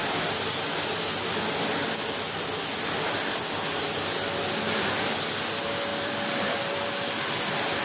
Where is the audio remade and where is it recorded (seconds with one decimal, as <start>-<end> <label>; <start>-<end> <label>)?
0.0-5.9 recorded; 5.9-6.9 remade; 6.9-7.8 recorded